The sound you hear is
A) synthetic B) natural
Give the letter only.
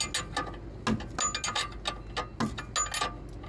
B